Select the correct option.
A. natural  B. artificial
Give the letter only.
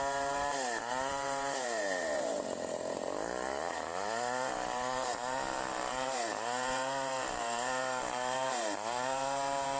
B